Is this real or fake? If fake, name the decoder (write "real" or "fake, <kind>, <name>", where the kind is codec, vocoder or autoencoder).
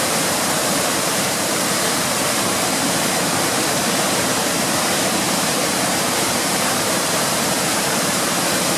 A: fake, vocoder, BigVGAN v2